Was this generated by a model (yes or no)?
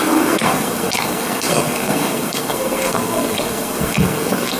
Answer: yes